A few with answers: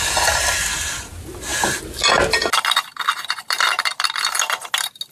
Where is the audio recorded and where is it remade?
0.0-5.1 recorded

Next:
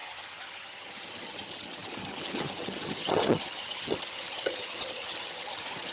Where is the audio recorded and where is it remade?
0.0-5.9 remade

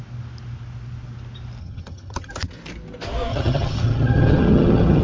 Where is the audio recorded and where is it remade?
0.0-1.6 recorded; 1.6-2.3 remade; 2.3-3.3 recorded; 3.3-5.0 remade

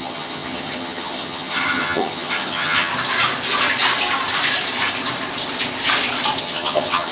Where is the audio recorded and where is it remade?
0.0-2.9 remade; 2.9-6.4 recorded; 6.4-7.1 remade

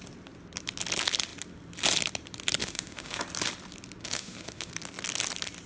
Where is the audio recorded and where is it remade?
0.0-2.6 recorded; 2.6-3.2 remade; 3.2-4.0 recorded; 4.0-4.7 remade; 4.7-5.7 recorded